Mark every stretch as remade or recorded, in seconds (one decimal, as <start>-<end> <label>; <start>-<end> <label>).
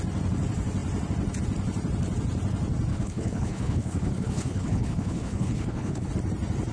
0.0-2.9 recorded; 2.9-6.1 remade; 6.1-6.7 recorded